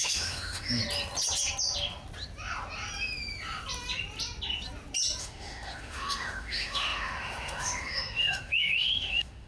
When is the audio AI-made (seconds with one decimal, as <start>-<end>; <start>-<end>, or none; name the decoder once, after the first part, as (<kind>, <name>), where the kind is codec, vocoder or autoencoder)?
0.0-0.8 (autoencoder, DAC-VAE); 5.2-9.5